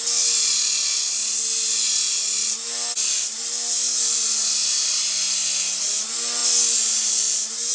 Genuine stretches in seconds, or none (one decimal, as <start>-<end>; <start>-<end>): 0.0-7.7